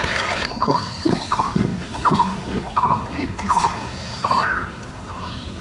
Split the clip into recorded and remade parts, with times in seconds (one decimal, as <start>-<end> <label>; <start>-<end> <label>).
0.0-5.6 remade